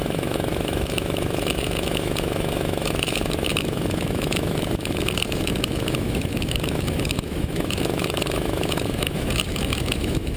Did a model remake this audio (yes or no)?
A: yes